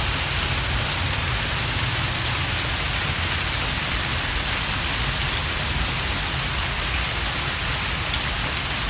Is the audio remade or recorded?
recorded